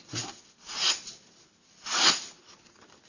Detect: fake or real real